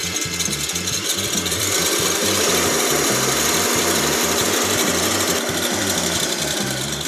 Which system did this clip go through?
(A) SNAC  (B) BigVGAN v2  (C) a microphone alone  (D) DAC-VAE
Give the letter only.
B